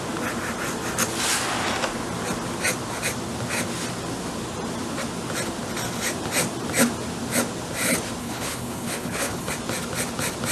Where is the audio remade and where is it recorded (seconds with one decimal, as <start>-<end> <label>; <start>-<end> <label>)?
0.0-8.2 recorded; 8.2-9.5 remade; 9.5-10.5 recorded

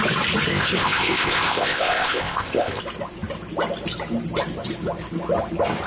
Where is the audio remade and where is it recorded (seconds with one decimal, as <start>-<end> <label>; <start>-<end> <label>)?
0.0-0.5 recorded; 0.5-2.8 remade; 2.8-5.9 recorded